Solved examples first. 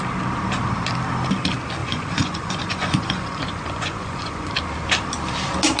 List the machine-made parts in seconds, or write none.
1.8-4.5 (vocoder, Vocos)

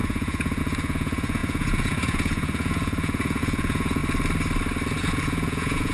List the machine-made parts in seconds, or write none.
0.0-4.0 (vocoder, Vocos); 5.0-5.9

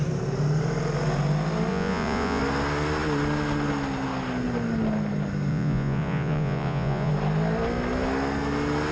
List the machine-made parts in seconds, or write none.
1.7-2.4 (vocoder, Vocos); 5.5-7.1

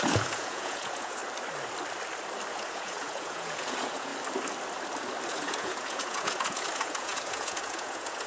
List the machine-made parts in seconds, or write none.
0.0-1.2 (vocoder, Vocos); 2.5-4.1; 5.3-8.3

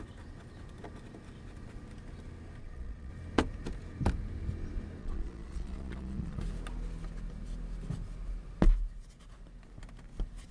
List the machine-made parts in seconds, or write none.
2.6-3.1 (vocoder, Vocos); 5.0-6.4

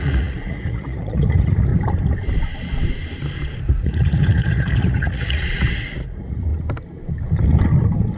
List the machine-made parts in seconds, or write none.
0.0-1.7 (vocoder, Vocos); 3.6-6.5